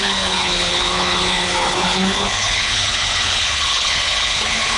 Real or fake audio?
fake